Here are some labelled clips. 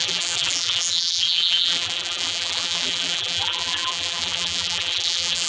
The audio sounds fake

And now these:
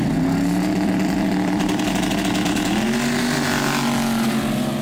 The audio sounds real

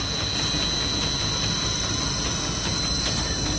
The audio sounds real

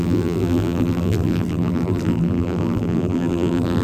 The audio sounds fake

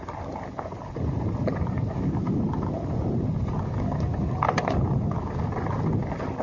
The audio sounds real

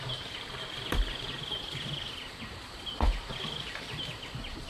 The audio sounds real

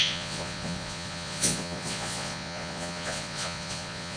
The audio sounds fake